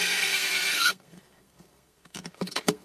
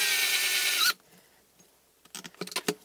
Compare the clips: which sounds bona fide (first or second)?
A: second